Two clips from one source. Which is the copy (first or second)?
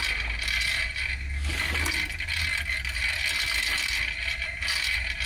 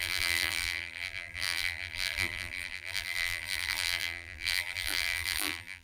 second